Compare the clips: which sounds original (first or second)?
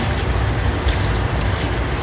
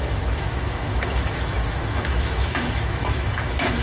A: first